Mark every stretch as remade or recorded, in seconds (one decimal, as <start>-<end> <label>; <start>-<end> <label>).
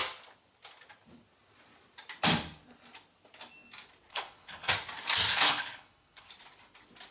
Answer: 0.0-4.1 recorded; 4.1-4.7 remade; 4.7-5.3 recorded; 5.3-6.3 remade; 6.3-7.1 recorded